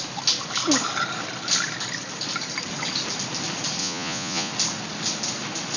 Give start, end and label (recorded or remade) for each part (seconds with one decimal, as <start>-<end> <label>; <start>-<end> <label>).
0.0-3.8 recorded; 3.8-4.5 remade; 4.5-5.8 recorded